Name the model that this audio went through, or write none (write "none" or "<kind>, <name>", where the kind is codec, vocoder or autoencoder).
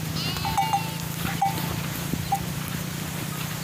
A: none